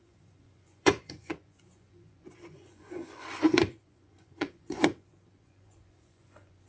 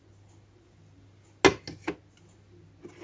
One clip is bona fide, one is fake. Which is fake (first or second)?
first